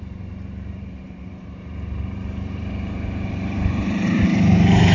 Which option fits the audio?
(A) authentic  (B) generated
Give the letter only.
B